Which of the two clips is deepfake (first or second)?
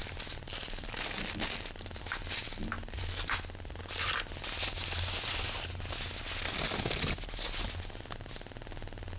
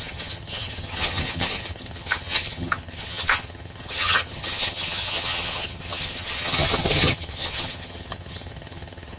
second